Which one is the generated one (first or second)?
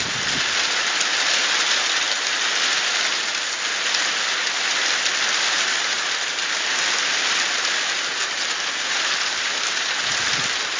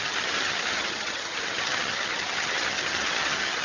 second